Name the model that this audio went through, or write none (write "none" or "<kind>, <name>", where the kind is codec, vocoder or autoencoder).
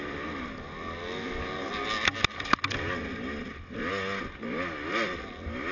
none